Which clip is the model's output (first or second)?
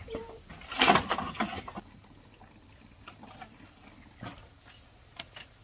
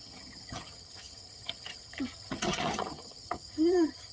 second